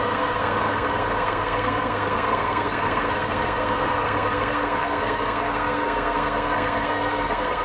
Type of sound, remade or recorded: remade